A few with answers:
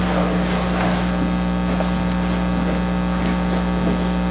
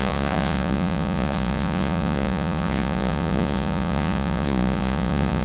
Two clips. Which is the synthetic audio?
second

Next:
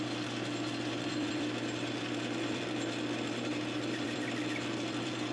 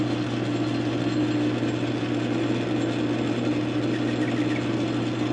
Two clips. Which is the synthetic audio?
first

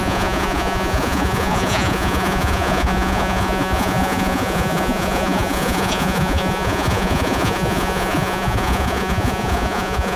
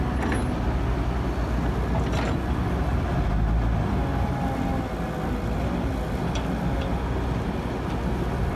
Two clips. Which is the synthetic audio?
first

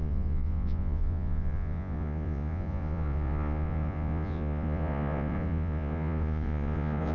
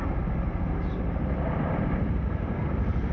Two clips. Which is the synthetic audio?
first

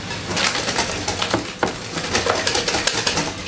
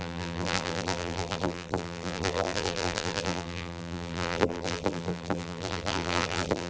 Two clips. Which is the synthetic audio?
second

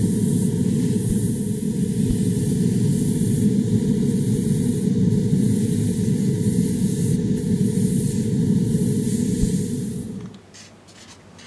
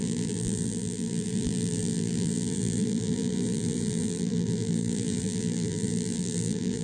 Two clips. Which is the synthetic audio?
second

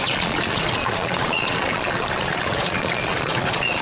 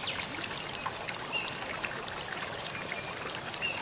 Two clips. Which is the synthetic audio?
first